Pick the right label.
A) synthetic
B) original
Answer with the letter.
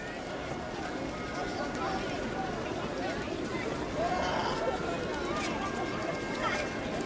B